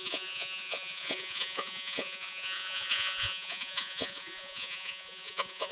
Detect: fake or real fake